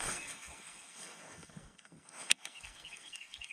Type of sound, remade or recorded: remade